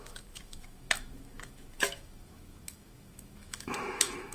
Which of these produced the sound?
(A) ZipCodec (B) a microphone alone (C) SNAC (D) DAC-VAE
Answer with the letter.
D